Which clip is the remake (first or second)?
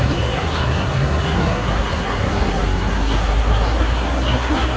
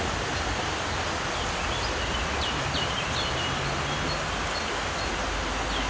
first